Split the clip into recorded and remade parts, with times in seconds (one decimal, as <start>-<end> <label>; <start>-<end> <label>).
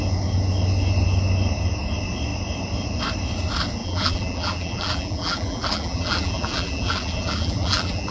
0.0-3.8 recorded; 3.8-8.1 remade